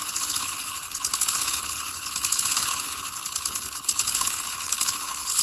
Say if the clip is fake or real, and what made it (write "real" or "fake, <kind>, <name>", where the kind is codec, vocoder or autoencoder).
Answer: fake, codec, HILCodec